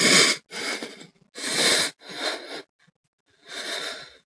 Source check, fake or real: real